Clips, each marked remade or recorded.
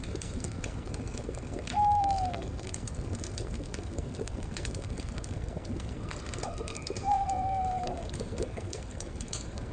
remade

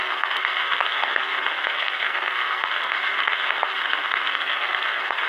remade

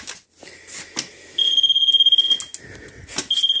recorded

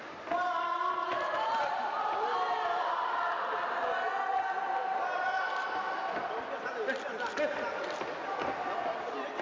recorded